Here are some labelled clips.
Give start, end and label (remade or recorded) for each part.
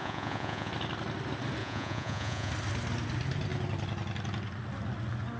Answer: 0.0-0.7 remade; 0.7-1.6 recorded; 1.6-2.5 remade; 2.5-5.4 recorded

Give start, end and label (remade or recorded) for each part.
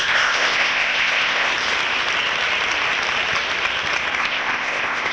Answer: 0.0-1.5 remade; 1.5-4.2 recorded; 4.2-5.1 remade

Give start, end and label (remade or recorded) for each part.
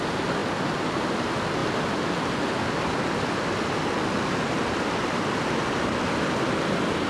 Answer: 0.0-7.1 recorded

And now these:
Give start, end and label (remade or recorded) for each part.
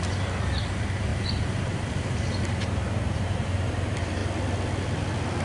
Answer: 0.0-4.2 remade; 4.2-5.4 recorded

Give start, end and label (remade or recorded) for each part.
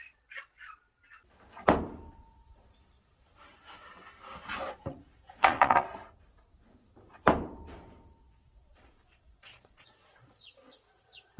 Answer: 0.0-1.0 remade; 1.0-2.1 recorded; 2.1-3.3 remade; 3.3-4.7 recorded; 4.7-6.0 remade; 6.0-8.2 recorded; 8.2-11.4 remade